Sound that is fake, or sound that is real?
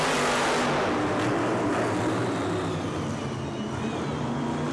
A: real